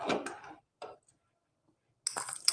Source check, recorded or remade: recorded